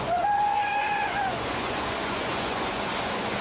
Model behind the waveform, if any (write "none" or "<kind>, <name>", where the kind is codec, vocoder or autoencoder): vocoder, Vocos